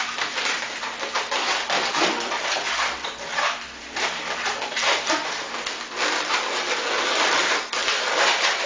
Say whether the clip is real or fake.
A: real